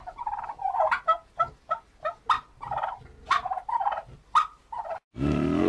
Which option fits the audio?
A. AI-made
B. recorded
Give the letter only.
B